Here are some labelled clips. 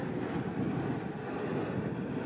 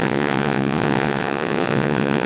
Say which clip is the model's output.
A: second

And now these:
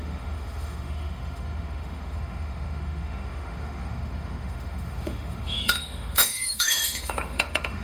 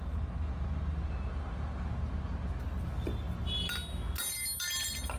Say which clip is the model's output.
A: first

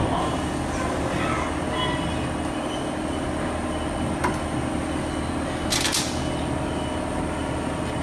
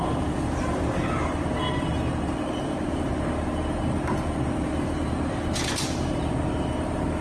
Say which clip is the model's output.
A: second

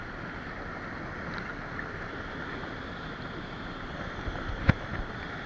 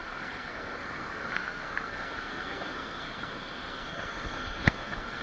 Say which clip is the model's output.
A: second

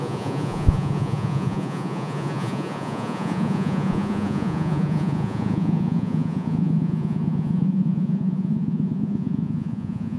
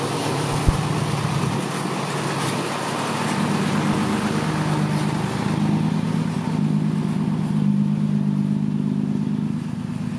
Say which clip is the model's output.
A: first